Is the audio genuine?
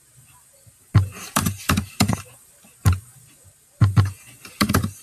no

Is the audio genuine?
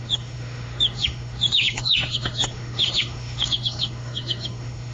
no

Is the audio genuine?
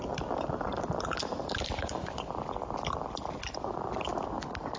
yes